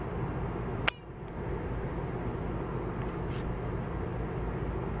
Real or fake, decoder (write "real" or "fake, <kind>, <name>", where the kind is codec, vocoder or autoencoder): real